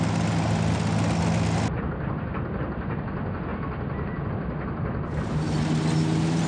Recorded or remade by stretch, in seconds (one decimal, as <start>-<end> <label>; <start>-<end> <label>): 0.0-6.5 recorded

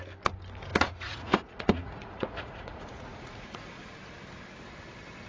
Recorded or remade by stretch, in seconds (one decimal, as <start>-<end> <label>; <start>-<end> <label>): 0.0-0.7 recorded; 0.7-3.9 remade; 3.9-5.3 recorded

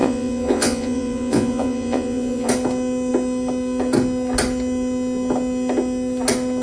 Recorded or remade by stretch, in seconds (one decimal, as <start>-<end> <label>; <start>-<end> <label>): 0.0-2.5 remade; 2.5-6.6 recorded

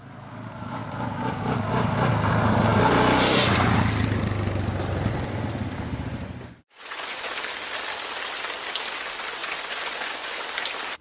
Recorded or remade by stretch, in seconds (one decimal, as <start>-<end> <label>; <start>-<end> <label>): 0.0-6.1 recorded; 6.1-7.3 remade; 7.3-9.4 recorded; 9.4-10.4 remade; 10.4-11.0 recorded

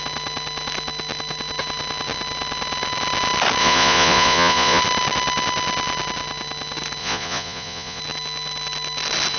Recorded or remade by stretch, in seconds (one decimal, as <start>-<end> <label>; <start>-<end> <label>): 0.0-3.6 recorded; 3.6-4.8 remade; 4.8-7.0 recorded; 7.0-8.0 remade; 8.0-9.4 recorded